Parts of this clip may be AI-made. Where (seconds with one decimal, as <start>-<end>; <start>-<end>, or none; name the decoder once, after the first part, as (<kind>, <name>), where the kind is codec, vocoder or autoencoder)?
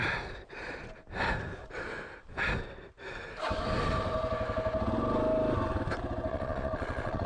6.3-7.3 (vocoder, Vocos)